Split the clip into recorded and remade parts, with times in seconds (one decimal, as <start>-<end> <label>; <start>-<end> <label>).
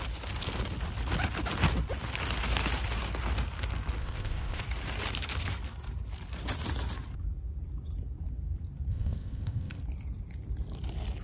0.0-4.0 recorded; 4.0-4.6 remade; 4.6-8.9 recorded; 8.9-9.8 remade; 9.8-11.2 recorded